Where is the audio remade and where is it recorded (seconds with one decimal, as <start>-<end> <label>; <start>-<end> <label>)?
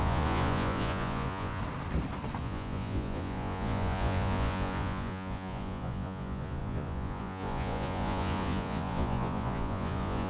0.0-1.6 remade; 1.6-2.4 recorded; 2.4-10.3 remade